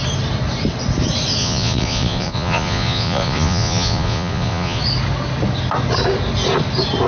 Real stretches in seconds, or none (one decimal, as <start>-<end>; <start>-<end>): 0.0-1.4; 4.8-7.1